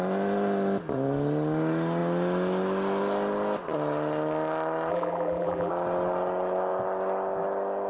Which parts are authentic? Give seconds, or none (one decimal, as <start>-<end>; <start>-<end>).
0.0-4.9; 5.7-7.9